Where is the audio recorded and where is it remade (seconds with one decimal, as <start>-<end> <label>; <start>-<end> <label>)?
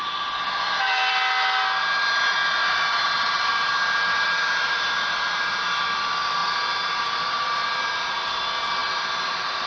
0.0-2.6 recorded; 2.6-5.7 remade; 5.7-6.4 recorded; 6.4-7.5 remade; 7.5-8.8 recorded; 8.8-9.7 remade